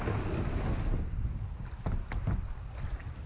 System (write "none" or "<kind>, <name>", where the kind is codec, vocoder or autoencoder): none